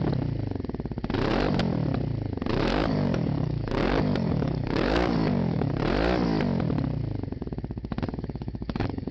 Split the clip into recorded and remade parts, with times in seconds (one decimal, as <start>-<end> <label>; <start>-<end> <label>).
0.0-2.7 recorded; 2.7-5.7 remade; 5.7-8.1 recorded; 8.1-9.1 remade